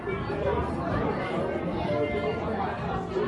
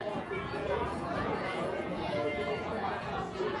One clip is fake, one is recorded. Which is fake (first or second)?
second